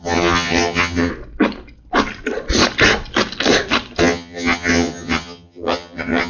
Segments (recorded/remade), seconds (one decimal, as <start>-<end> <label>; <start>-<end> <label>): 0.0-1.1 remade; 1.1-4.0 recorded; 4.0-6.3 remade